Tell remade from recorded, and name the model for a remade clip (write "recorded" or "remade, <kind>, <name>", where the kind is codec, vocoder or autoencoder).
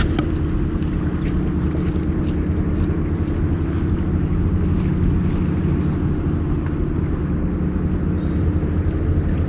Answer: recorded